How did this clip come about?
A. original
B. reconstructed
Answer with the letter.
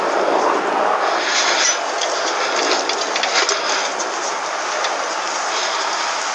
A